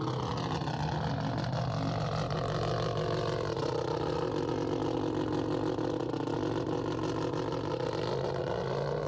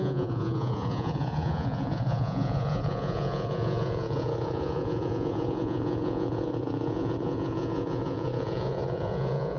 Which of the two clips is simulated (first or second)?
second